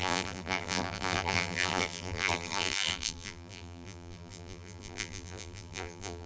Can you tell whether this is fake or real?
fake